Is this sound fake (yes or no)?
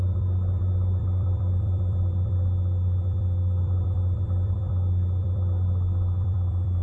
yes